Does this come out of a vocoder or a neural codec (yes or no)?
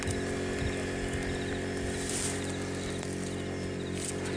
no